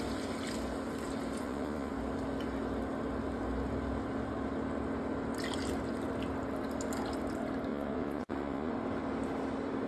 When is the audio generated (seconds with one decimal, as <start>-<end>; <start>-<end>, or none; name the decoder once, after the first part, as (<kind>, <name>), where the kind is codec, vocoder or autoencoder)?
1.4-1.9 (vocoder, Vocos); 7.7-8.7